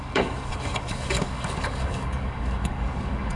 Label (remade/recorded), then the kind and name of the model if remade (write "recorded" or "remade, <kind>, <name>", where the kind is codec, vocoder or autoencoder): remade, codec, DAC